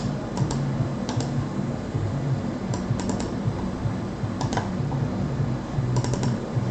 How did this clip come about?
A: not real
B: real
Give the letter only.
A